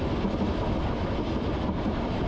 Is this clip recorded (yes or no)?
yes